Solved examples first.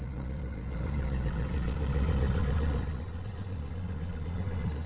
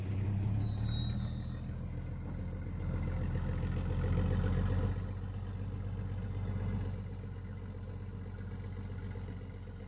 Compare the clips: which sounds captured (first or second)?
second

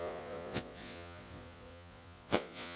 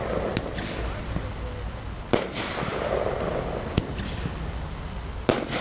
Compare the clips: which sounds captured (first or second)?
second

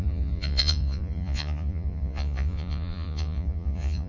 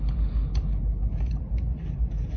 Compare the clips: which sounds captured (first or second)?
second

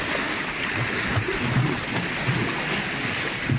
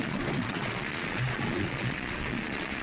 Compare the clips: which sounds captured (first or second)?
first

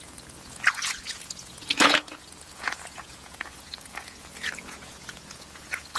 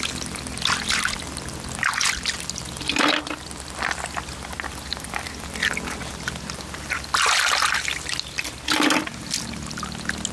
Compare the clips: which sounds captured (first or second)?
second